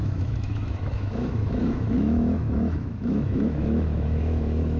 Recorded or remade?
remade